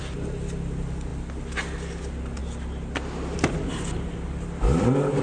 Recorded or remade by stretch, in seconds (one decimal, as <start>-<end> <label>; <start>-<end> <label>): 0.0-5.2 recorded